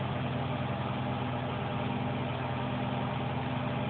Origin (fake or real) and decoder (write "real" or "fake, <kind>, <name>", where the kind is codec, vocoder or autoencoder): real